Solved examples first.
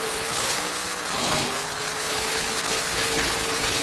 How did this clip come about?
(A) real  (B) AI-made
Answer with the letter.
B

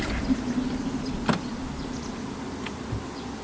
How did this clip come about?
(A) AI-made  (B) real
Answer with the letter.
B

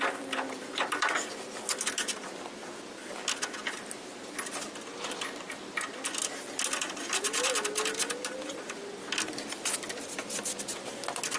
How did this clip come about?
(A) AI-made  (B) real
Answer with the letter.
B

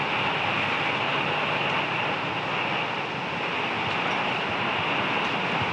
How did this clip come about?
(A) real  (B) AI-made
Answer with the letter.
A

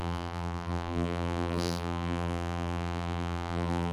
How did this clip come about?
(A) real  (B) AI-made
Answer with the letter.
B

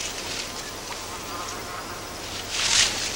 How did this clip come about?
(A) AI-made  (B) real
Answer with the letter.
B